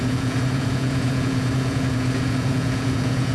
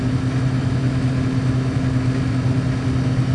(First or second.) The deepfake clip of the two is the first